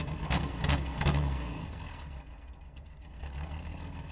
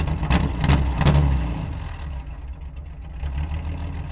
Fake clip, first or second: first